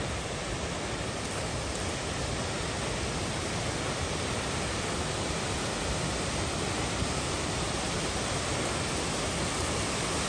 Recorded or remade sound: recorded